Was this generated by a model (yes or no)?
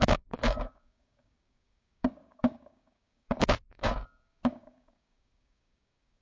yes